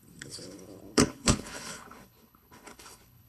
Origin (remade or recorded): remade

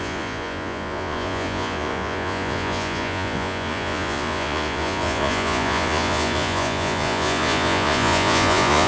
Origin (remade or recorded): remade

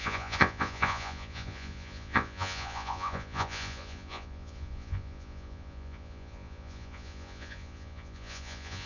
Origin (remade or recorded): remade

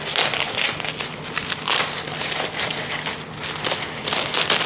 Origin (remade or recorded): recorded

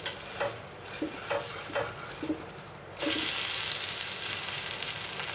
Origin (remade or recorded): recorded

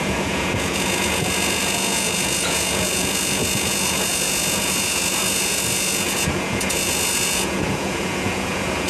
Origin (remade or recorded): remade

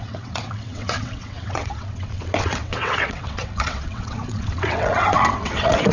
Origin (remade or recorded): remade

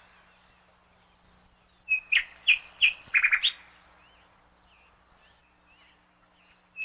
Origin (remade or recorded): recorded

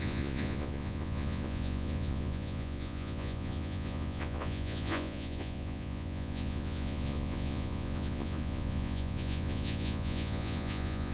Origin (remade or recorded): remade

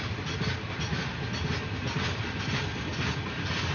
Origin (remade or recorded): recorded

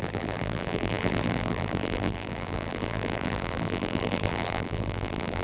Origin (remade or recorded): remade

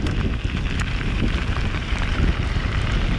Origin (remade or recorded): remade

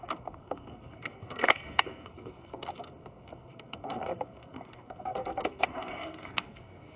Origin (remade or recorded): remade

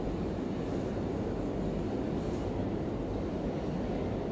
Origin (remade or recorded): recorded